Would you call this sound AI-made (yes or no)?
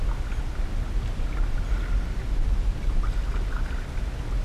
no